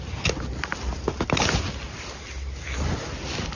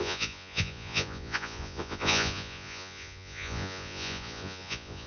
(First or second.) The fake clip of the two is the second